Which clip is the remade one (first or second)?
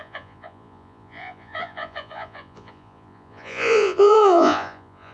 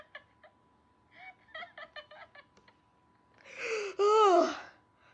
first